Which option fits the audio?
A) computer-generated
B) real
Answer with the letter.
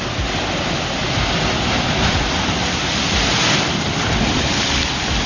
A